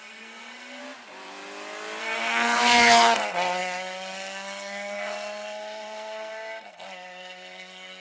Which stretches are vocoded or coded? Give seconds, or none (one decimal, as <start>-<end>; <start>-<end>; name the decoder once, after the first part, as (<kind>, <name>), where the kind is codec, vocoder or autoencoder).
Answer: 0.0-0.8 (codec, SNAC); 2.0-8.0